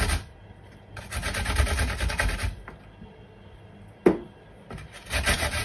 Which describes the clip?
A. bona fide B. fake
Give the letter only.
A